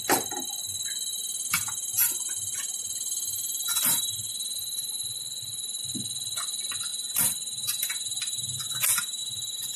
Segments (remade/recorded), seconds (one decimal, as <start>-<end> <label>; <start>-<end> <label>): 0.0-1.1 recorded; 1.1-5.8 remade; 5.8-6.9 recorded; 6.9-9.2 remade; 9.2-9.8 recorded